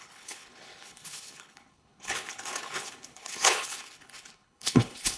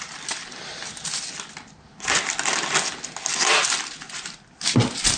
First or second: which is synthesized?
first